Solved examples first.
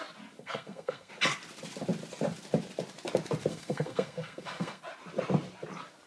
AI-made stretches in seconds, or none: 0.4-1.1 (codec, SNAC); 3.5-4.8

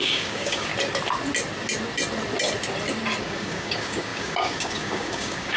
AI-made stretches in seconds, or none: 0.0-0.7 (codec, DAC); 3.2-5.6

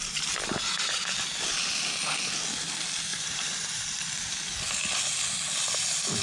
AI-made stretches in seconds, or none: 3.1-4.0 (vocoder, BigVGAN v2)